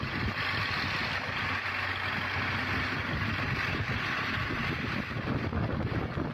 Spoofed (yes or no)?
no